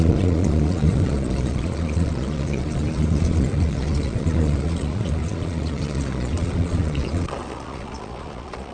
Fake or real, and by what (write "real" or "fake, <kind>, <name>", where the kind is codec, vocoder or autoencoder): fake, vocoder, Vocos